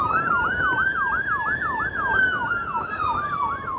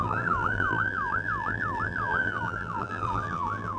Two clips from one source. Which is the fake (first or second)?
second